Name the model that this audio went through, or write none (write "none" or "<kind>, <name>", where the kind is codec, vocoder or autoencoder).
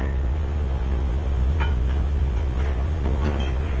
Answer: vocoder, Vocos